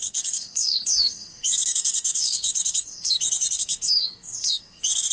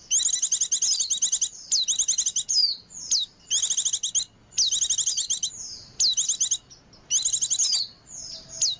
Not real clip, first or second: first